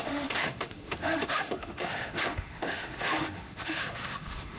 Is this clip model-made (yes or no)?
yes